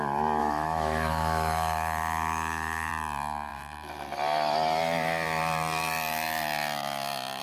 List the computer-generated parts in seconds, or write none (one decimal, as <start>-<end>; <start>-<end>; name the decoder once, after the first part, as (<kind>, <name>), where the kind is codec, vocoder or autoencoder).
0.4-2.9 (autoencoder, DAC-VAE)